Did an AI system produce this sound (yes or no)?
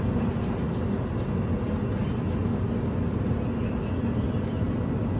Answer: no